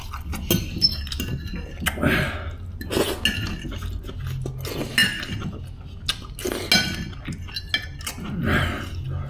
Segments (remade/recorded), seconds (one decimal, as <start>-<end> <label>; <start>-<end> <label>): 0.0-9.3 recorded